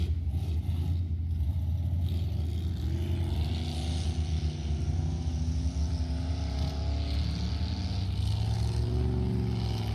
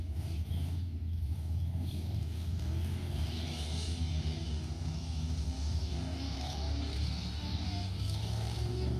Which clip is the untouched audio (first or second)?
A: first